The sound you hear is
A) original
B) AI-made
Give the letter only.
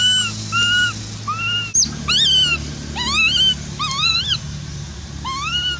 A